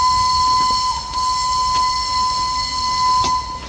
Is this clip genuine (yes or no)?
yes